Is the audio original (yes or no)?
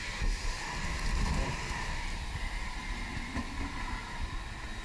yes